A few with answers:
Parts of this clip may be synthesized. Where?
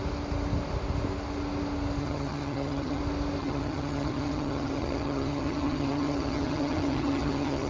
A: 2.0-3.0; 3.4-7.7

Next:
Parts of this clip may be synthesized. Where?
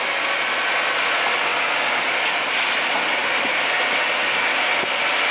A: none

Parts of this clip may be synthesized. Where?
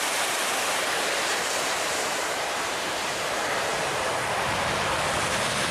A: 0.6-3.2; 3.7-4.9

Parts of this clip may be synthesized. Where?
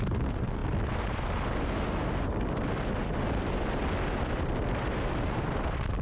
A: none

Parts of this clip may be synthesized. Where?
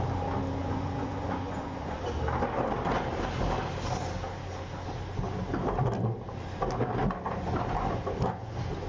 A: 0.6-2.2